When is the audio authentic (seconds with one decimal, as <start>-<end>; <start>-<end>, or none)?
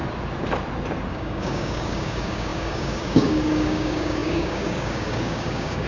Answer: 0.0-1.1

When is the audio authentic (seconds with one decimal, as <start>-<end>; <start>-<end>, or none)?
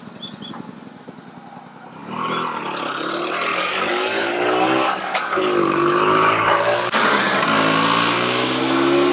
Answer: 0.0-3.5; 7.2-9.1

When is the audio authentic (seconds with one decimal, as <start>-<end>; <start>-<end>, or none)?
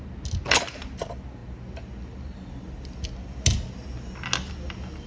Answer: 0.0-5.1